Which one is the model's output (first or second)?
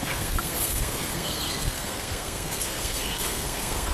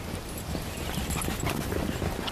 first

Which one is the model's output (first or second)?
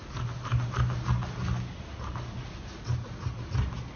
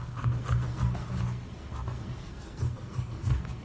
second